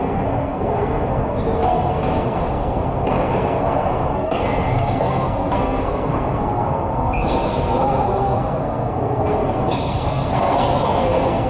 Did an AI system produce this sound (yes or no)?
yes